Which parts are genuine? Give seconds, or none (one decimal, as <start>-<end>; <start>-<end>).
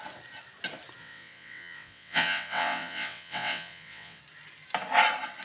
0.0-1.0; 4.2-5.4